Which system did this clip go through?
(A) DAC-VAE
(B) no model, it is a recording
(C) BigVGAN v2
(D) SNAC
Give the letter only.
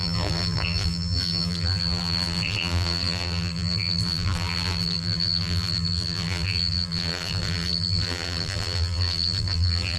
C